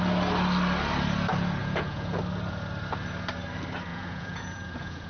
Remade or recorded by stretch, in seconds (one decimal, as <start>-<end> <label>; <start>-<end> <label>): 0.0-1.6 recorded; 1.6-2.2 remade; 2.2-3.9 recorded; 3.9-5.1 remade